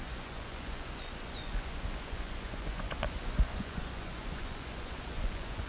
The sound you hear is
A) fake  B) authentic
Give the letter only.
A